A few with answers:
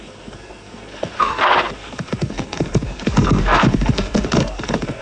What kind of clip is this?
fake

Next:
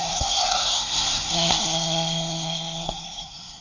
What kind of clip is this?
fake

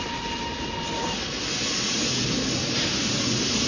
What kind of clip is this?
real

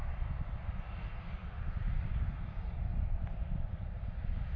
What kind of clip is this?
real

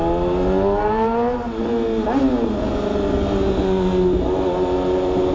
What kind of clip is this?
real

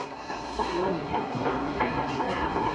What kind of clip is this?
fake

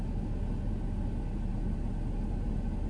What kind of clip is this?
real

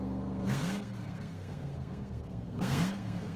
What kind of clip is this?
fake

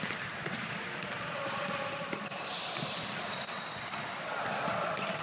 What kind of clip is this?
real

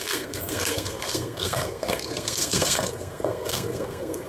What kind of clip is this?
fake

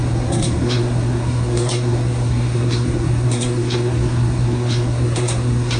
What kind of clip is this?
fake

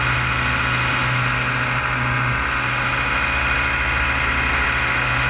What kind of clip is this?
real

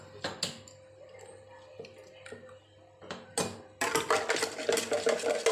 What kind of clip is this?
real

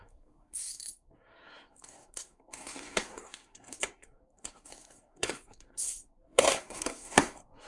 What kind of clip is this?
fake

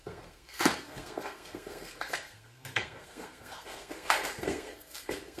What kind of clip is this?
fake